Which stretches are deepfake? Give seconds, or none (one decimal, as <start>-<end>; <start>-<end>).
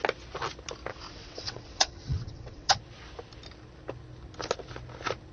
0.9-2.8